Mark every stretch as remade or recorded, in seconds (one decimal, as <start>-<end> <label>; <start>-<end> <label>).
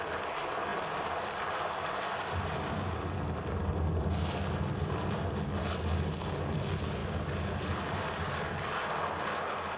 0.0-9.8 recorded